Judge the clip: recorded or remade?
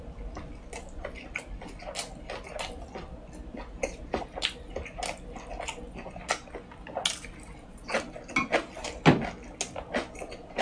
recorded